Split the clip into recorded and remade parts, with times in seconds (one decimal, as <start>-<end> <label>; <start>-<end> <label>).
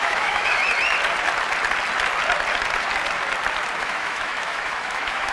0.0-0.6 remade; 0.6-3.8 recorded; 3.8-5.3 remade